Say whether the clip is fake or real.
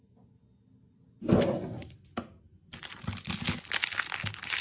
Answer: real